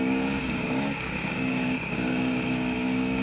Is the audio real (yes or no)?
no